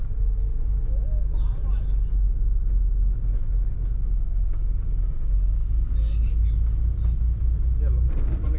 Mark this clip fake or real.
real